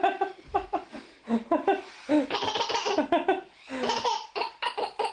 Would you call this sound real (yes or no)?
yes